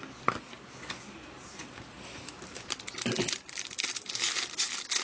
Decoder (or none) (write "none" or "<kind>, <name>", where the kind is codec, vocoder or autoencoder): none